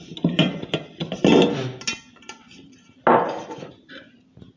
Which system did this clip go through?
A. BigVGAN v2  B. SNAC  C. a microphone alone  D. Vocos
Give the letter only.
C